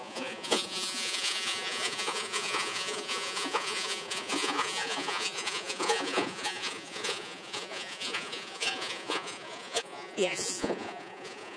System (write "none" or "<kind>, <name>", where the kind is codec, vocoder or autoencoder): vocoder, Vocos